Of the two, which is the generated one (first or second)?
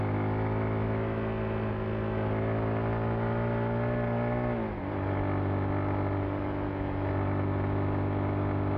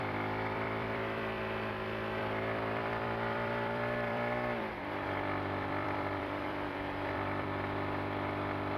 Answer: second